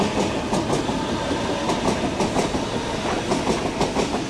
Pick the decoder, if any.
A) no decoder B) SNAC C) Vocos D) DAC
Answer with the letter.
A